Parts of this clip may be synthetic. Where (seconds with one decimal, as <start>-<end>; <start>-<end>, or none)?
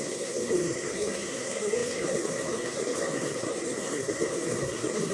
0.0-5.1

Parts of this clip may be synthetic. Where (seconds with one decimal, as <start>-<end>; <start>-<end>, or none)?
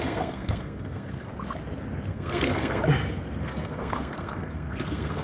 0.0-1.3; 2.1-2.8; 3.4-5.2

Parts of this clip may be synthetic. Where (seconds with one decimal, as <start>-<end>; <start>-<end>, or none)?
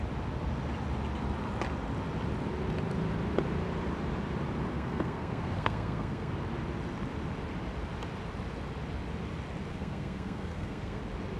4.7-6.3; 9.7-11.0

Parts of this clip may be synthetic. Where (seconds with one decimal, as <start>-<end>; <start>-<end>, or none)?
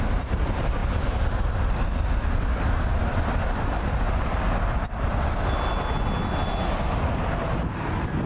none